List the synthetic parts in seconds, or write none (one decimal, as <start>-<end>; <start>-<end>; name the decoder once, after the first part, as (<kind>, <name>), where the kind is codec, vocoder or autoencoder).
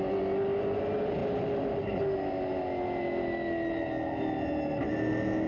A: none